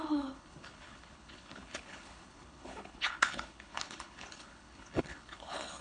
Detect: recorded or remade remade